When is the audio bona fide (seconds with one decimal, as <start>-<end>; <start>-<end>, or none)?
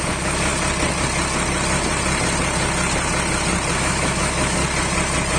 0.5-3.7; 4.6-5.4